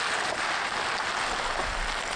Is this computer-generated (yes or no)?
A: no